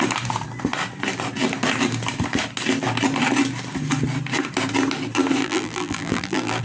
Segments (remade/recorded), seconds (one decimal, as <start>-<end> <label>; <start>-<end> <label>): 0.0-5.4 recorded; 5.4-6.6 remade